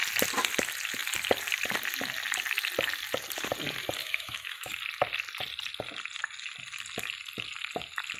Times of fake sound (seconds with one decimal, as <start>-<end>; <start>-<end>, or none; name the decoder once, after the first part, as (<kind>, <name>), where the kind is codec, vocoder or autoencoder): 4.0-4.7 (autoencoder, DAC-VAE)